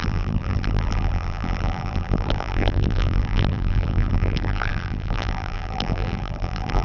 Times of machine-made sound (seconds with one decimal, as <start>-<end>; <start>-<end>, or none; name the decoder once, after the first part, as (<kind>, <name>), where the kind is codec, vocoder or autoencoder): 0.0-6.8 (vocoder, BigVGAN v2)